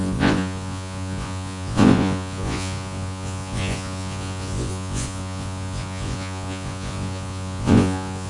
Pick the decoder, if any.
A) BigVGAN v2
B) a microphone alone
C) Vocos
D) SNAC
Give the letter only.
C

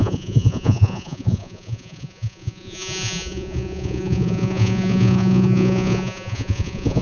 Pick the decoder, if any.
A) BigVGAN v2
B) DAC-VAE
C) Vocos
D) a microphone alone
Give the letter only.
C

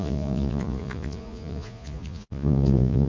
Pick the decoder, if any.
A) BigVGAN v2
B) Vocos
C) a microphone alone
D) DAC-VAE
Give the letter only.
B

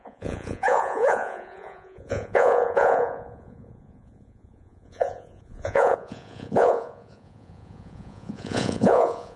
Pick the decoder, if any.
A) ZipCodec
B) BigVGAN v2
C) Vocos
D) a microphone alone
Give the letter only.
C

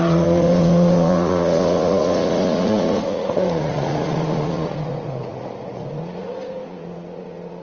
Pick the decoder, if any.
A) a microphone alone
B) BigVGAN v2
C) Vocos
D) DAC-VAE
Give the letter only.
C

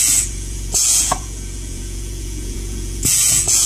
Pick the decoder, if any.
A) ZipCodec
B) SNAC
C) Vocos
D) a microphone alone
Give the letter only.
C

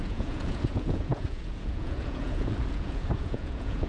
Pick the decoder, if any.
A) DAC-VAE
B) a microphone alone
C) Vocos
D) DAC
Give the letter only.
C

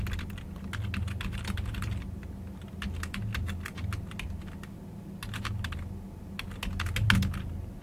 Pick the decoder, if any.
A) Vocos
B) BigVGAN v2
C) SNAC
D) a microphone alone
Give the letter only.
D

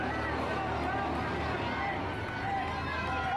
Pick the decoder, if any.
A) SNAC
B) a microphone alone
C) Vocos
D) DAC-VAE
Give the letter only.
B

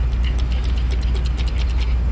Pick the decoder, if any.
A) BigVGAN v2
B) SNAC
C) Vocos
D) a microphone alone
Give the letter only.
D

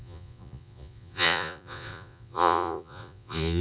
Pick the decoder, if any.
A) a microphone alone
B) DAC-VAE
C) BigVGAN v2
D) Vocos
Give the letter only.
D